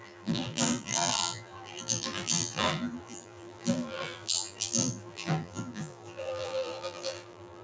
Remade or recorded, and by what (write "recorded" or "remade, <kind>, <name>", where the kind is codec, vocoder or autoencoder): remade, vocoder, BigVGAN v2